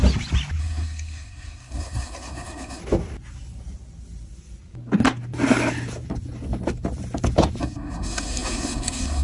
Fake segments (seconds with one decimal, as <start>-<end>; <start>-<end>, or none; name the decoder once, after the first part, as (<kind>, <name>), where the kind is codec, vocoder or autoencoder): 0.6-2.8 (codec, SNAC); 7.6-9.2